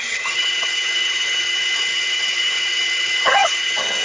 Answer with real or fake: fake